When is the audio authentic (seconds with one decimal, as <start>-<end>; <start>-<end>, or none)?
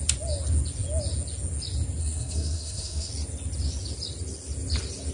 0.0-2.0; 3.1-5.1